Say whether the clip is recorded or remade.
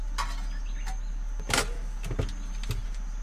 recorded